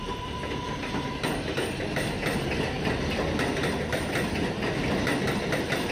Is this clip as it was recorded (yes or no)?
yes